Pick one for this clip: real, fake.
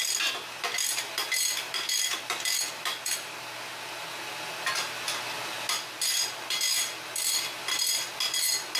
real